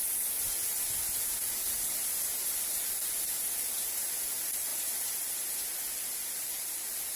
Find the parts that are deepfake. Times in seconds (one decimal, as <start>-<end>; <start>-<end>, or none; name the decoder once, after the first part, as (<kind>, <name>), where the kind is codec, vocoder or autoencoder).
none